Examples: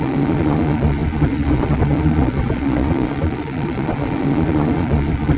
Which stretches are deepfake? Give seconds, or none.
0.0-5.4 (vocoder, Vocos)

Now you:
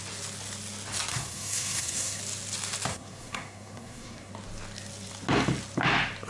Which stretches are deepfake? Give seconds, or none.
1.1-2.2 (codec, SNAC); 2.9-4.3

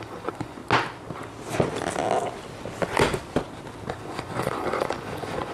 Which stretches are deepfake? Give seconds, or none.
0.0-0.6 (vocoder, Vocos); 3.9-5.5

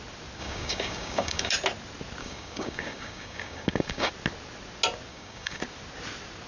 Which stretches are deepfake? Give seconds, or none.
0.4-1.5 (codec, DAC); 2.2-4.1; 5.1-5.6